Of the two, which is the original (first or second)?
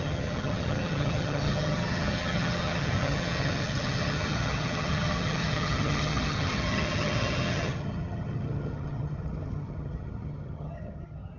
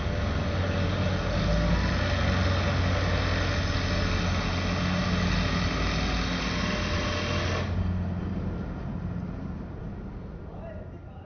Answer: second